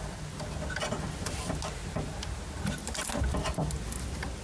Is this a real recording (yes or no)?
yes